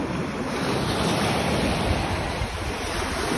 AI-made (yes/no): no